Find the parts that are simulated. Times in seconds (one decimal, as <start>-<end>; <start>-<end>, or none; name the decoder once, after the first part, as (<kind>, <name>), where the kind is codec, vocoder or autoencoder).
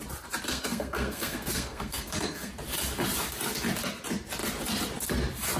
0.5-2.5 (codec, SNAC)